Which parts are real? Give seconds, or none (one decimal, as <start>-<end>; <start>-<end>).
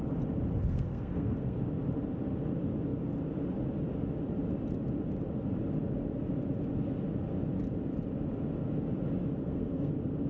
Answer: 0.0-0.5; 1.6-9.4; 9.9-10.3